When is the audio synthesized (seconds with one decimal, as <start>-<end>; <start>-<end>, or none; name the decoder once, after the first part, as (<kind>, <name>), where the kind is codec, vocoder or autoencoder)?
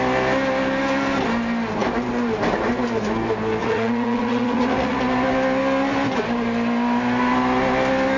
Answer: 3.6-5.0 (vocoder, Vocos)